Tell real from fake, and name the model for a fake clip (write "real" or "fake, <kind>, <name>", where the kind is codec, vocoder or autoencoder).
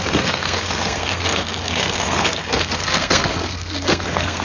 fake, codec, SNAC